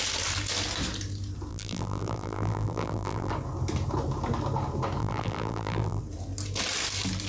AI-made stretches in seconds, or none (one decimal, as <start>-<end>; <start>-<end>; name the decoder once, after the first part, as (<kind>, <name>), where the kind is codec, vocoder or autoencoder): 1.5-3.3 (vocoder, BigVGAN v2); 5.0-6.0

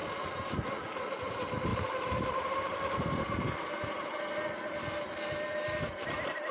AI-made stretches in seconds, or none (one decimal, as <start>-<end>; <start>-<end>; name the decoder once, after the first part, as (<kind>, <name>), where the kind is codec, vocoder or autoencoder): 1.7-4.2 (vocoder, BigVGAN v2)

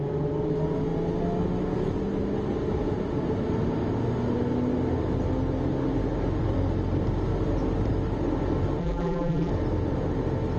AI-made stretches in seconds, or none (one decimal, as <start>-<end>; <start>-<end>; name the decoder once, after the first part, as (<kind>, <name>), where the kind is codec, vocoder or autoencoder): 8.8-9.5 (vocoder, BigVGAN v2)